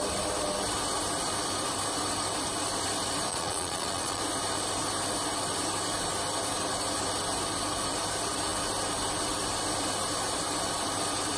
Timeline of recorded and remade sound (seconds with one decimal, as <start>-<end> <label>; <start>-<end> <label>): 0.0-3.3 recorded; 3.3-4.2 remade; 4.2-11.4 recorded